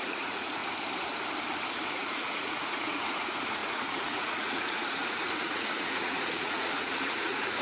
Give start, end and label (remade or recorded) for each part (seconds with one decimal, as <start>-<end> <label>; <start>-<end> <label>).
0.0-0.6 remade; 0.6-1.9 recorded; 1.9-7.6 remade